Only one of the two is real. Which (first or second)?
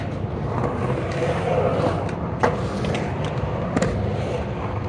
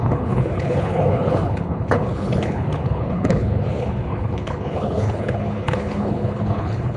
first